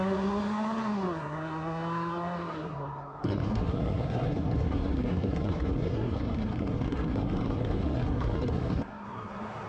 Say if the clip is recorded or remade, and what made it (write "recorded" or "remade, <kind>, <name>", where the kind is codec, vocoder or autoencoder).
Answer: remade, codec, SNAC